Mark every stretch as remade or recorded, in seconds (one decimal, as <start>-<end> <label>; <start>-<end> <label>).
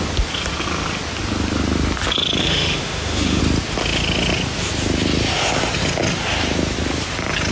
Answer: 0.0-2.4 recorded; 2.4-3.4 remade; 3.4-7.5 recorded